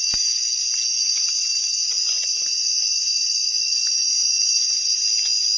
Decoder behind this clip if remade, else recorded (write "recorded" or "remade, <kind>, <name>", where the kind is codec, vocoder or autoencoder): recorded